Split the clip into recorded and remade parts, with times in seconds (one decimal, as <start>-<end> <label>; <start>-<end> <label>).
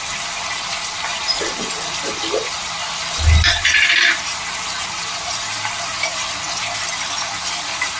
0.0-8.0 remade